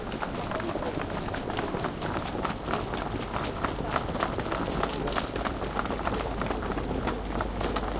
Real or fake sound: real